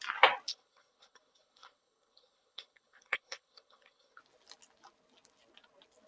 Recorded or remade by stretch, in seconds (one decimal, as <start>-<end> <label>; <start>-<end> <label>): 0.0-0.5 recorded; 0.5-4.2 remade; 4.2-6.1 recorded